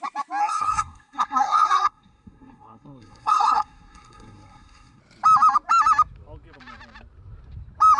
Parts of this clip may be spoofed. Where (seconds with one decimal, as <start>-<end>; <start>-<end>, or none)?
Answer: 0.4-5.0